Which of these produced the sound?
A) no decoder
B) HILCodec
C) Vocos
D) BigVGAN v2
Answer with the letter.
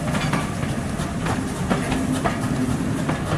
A